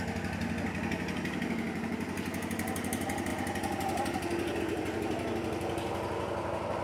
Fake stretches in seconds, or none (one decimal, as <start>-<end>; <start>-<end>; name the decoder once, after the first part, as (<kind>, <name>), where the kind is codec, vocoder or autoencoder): none